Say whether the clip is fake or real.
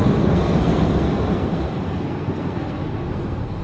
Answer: fake